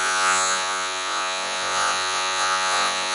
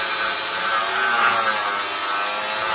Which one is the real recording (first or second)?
second